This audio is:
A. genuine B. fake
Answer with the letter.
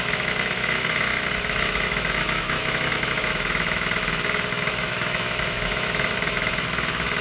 B